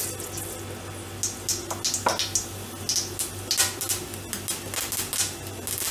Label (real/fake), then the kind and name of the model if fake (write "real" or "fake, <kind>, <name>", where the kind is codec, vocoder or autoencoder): real